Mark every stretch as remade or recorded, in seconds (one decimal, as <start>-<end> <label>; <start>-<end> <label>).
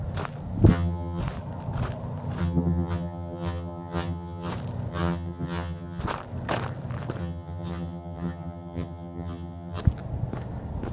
0.0-0.7 recorded; 0.7-1.2 remade; 1.2-2.4 recorded; 2.4-4.5 remade; 4.5-4.9 recorded; 4.9-6.0 remade; 6.0-7.2 recorded; 7.2-9.8 remade; 9.8-10.9 recorded